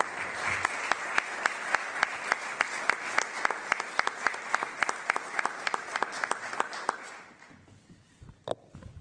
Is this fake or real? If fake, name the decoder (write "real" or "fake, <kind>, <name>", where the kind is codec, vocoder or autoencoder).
real